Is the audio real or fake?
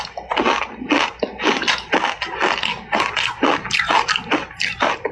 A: real